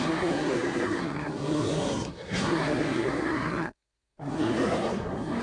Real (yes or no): no